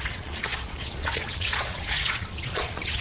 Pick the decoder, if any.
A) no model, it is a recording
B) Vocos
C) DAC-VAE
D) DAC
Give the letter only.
B